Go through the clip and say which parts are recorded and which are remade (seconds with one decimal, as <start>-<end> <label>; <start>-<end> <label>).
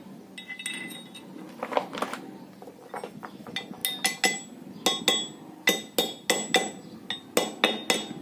0.0-8.2 recorded